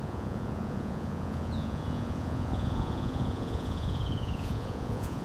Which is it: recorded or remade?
remade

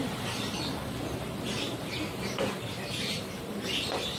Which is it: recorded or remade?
recorded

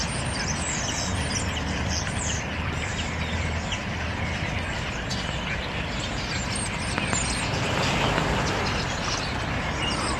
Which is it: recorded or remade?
recorded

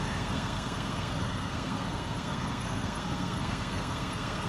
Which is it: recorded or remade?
remade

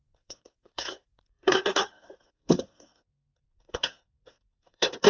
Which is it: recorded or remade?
remade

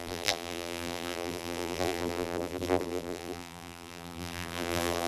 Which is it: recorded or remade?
remade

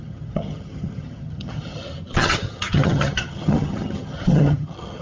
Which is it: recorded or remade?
remade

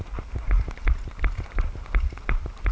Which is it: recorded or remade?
recorded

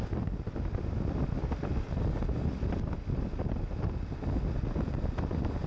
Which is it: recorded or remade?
recorded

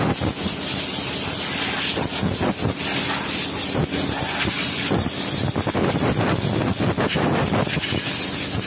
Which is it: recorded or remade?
recorded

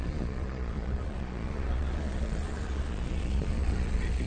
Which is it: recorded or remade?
remade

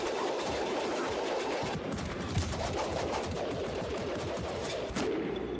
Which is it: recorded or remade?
remade